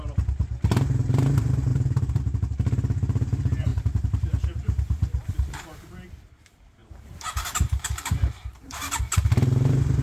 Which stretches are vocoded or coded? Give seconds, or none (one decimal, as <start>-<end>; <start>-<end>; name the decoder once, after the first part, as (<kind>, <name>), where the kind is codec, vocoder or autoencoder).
1.7-2.2 (vocoder, BigVGAN v2); 3.7-5.3; 6.8-9.0